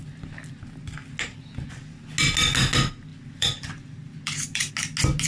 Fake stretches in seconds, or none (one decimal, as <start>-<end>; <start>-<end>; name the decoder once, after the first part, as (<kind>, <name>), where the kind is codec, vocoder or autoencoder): 3.1-4.7 (vocoder, BigVGAN v2)